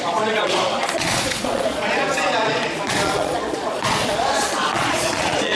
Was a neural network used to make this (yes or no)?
yes